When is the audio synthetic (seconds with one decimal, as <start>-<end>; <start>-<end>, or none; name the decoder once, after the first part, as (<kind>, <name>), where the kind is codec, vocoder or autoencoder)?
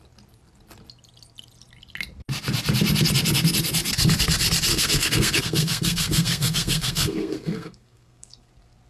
4.7-8.5 (codec, SNAC)